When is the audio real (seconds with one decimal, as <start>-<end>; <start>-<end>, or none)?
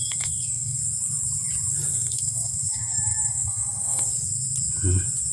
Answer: 0.8-1.9; 4.1-5.3